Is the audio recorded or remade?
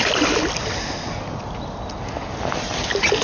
recorded